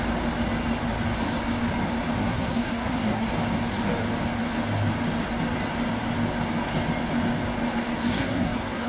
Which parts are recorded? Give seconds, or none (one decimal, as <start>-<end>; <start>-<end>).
0.0-2.2; 3.3-8.0